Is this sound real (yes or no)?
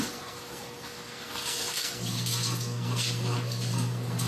no